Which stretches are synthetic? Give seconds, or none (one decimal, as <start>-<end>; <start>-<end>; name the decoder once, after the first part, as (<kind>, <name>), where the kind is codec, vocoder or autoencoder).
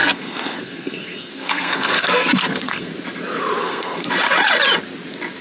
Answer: 0.0-2.9 (codec, SNAC); 3.6-4.1